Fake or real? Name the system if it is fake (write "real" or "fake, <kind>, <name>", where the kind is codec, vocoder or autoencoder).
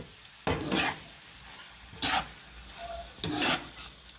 real